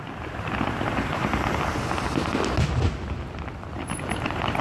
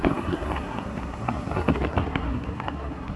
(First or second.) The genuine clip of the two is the first